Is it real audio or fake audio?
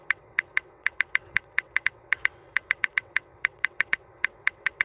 fake